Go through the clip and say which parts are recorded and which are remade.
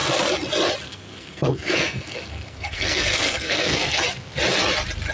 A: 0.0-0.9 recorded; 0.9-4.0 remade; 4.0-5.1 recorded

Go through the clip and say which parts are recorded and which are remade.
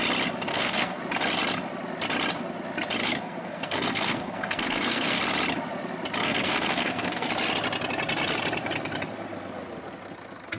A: 0.0-0.5 recorded; 0.5-1.0 remade; 1.0-3.0 recorded; 3.0-5.2 remade; 5.2-6.2 recorded; 6.2-7.3 remade; 7.3-10.6 recorded